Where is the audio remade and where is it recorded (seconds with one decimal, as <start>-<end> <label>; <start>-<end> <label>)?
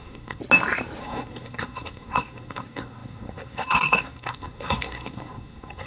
0.0-0.4 remade; 0.4-1.0 recorded; 1.0-5.9 remade